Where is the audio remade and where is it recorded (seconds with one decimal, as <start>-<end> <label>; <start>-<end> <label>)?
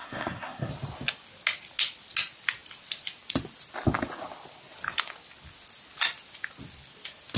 0.0-0.7 remade; 0.7-7.4 recorded